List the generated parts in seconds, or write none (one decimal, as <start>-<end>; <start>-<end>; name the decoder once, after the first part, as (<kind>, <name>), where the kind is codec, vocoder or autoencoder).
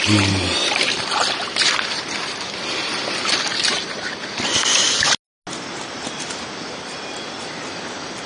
3.5-4.1 (vocoder, BigVGAN v2)